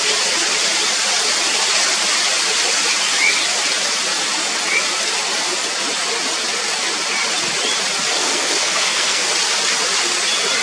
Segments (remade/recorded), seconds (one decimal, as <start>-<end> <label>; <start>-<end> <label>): 0.0-8.2 recorded; 8.2-9.3 remade; 9.3-10.6 recorded